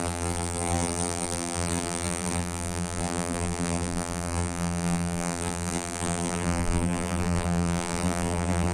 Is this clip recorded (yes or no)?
no